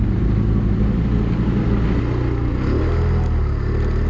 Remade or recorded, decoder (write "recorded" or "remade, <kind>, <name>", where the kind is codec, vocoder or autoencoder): recorded